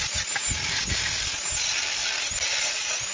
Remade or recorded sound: recorded